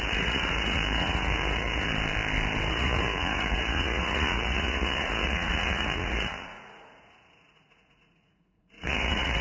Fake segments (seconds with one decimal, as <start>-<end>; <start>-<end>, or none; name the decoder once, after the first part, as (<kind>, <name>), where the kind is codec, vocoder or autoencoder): 0.0-1.9 (vocoder, Vocos); 2.7-9.4